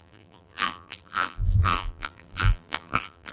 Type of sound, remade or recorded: remade